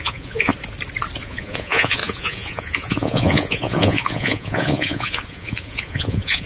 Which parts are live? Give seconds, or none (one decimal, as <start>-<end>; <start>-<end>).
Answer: 0.5-1.2